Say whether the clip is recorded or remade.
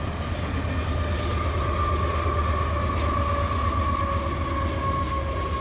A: recorded